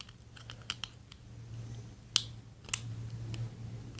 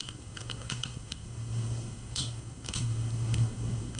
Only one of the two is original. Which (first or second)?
first